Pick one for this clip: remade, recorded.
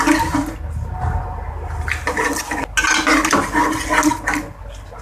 recorded